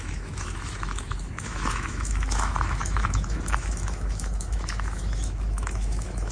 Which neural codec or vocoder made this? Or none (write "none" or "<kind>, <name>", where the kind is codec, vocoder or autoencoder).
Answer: autoencoder, DAC-VAE